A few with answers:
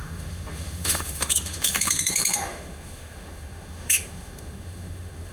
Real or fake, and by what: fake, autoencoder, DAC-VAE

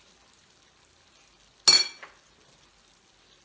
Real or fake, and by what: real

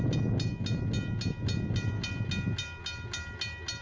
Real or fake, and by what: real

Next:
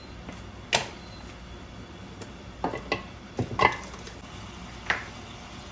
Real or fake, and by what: real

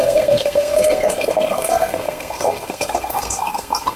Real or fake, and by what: fake, codec, SNAC